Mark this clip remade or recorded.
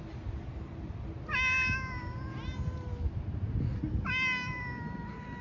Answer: recorded